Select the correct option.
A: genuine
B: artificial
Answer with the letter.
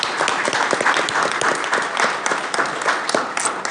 A